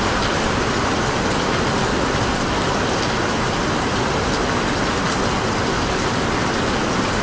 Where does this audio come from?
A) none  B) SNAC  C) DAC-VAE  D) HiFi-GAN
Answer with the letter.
A